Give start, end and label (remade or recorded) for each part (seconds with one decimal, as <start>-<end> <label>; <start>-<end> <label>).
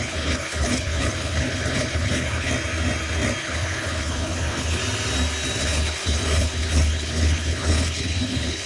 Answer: 0.0-2.5 remade; 2.5-3.4 recorded; 3.4-4.8 remade; 4.8-5.6 recorded; 5.6-8.7 remade